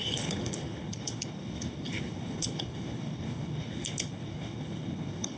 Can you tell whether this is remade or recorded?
remade